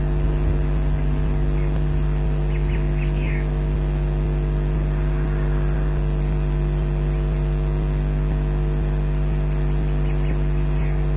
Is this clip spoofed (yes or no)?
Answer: no